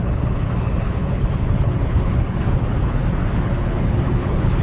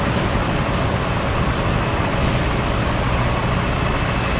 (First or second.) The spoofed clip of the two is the first